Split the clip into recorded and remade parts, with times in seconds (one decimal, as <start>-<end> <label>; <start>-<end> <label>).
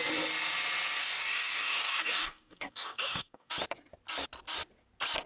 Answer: 0.0-1.0 recorded; 1.0-3.5 remade; 3.5-5.3 recorded